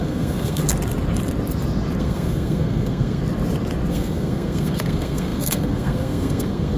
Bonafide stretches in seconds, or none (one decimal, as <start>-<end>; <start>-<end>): 0.6-2.0; 3.2-3.9